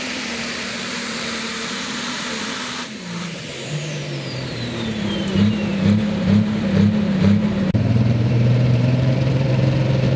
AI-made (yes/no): yes